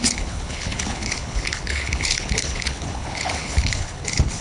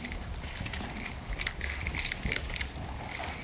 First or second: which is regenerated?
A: first